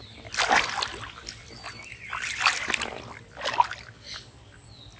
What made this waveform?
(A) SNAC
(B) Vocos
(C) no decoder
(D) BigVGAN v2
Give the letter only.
C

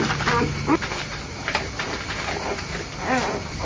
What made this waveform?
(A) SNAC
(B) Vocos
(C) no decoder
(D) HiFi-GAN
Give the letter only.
C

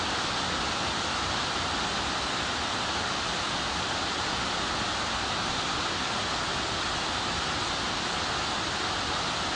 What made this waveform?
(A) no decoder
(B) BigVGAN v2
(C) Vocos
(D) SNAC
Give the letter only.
A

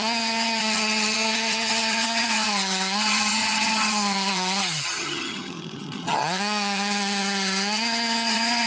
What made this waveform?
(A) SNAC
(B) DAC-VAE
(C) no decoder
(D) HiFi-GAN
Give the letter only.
D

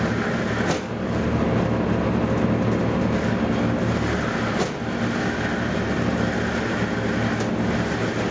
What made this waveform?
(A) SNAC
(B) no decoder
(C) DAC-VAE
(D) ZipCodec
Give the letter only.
B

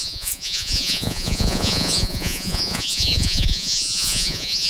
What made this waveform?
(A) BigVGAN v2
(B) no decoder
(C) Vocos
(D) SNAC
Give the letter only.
C